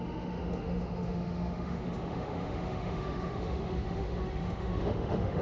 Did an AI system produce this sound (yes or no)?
yes